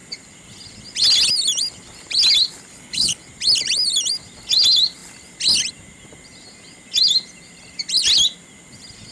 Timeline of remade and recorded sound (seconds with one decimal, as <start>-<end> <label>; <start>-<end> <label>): 0.0-2.7 recorded; 2.7-3.3 remade; 3.3-9.1 recorded